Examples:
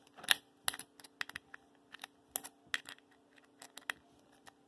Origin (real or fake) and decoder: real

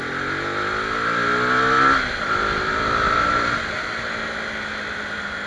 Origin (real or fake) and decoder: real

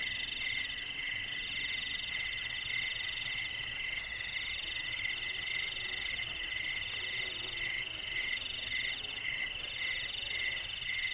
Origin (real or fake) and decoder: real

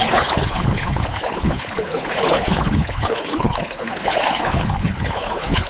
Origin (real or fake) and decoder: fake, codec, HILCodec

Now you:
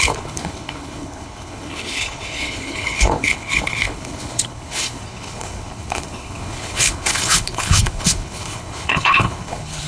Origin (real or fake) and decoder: fake, codec, HILCodec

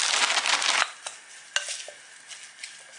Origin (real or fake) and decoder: real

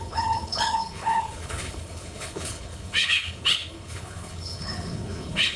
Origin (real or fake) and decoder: fake, codec, HILCodec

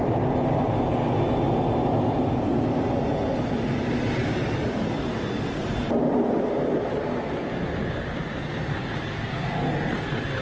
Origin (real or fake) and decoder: real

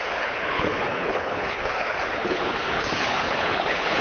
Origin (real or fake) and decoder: fake, codec, HILCodec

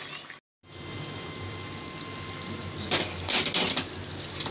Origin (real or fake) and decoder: real